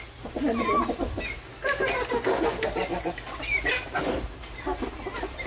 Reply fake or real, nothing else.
real